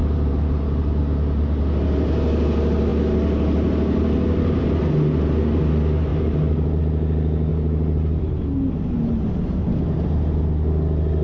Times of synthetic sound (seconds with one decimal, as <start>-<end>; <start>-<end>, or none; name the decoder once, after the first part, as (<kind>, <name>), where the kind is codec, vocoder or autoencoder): 0.0-1.0 (vocoder, BigVGAN v2); 6.1-6.8; 7.5-8.2

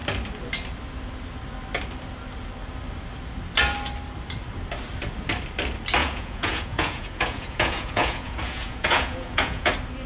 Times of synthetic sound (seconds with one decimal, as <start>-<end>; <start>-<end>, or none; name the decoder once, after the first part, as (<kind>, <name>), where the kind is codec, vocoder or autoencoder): 6.0-9.7 (vocoder, Vocos)

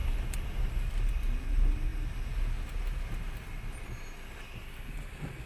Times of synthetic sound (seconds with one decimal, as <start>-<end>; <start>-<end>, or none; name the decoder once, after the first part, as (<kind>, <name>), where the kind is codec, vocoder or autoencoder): none